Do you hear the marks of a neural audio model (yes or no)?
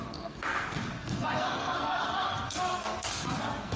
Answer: yes